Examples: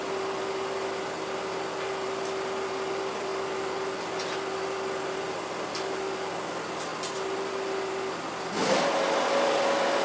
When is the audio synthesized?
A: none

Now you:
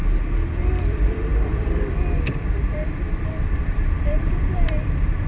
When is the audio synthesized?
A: 0.7-5.3

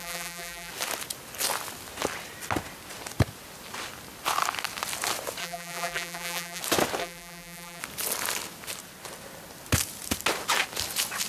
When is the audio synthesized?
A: 0.0-0.7; 5.4-6.6; 7.0-7.8

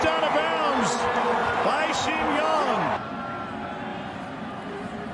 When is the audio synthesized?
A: 1.4-3.1; 3.9-4.4

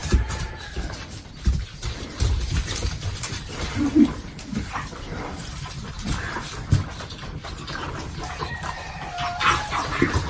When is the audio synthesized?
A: 0.0-0.7